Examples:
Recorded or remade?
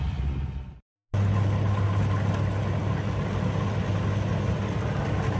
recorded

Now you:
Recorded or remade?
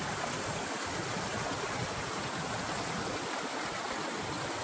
recorded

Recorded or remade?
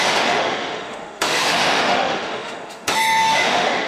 remade